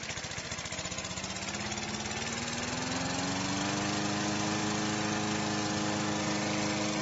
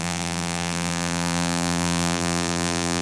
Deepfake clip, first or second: second